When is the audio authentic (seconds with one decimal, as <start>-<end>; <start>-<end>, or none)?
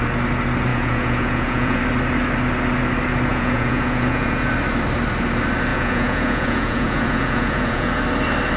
0.0-0.7; 1.8-3.3; 4.5-5.7; 8.0-8.6